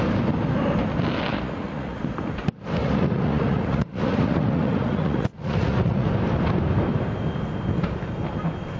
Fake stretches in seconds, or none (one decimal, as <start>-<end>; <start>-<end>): 1.3-2.0; 2.8-6.1